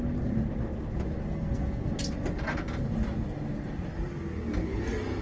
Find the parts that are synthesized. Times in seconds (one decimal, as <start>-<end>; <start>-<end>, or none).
1.2-1.9